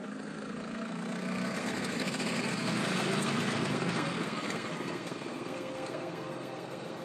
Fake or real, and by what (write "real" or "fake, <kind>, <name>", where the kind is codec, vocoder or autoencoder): fake, codec, SNAC